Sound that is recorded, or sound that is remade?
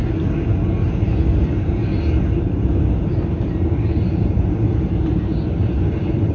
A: recorded